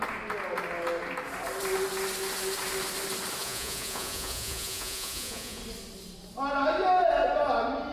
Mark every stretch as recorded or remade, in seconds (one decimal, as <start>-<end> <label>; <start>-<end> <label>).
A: 0.0-3.4 recorded; 3.4-5.6 remade; 5.6-7.9 recorded